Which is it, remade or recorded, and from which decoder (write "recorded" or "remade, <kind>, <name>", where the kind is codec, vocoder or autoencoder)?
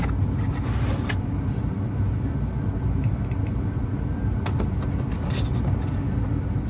recorded